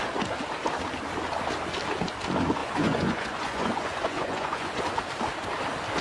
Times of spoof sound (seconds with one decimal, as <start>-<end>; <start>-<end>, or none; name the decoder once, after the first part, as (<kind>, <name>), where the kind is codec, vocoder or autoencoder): 2.6-4.8 (vocoder, Vocos)